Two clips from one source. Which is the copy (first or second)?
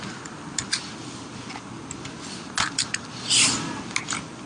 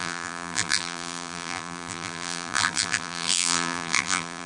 second